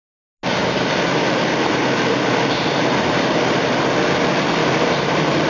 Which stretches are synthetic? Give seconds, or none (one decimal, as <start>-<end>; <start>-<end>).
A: 0.6-3.6; 4.6-5.5